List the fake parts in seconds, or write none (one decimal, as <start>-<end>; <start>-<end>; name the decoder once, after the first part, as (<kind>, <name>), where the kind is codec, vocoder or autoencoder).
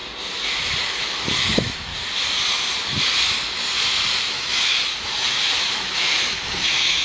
0.8-1.9 (autoencoder, DAC-VAE); 4.2-7.0